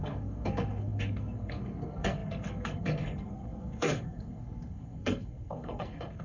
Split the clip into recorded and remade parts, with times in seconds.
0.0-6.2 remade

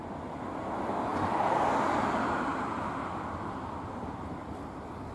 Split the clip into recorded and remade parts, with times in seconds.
0.0-1.1 recorded; 1.1-2.0 remade; 2.0-2.5 recorded; 2.5-5.1 remade